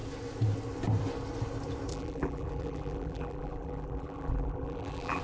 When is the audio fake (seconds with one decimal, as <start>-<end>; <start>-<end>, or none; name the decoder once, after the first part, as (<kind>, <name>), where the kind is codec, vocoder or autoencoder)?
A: 1.9-5.2 (vocoder, BigVGAN v2)